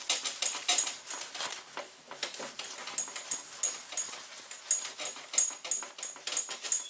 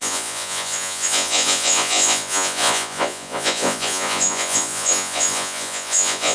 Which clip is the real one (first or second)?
first